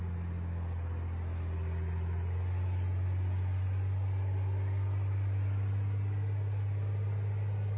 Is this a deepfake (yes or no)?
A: no